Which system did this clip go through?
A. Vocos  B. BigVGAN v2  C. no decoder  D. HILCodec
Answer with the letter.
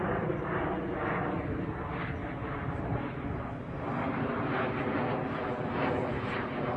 C